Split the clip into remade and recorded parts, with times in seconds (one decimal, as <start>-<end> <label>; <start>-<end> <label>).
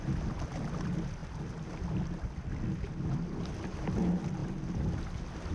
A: 0.0-5.5 recorded